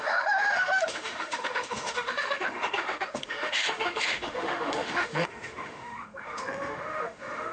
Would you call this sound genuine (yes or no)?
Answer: no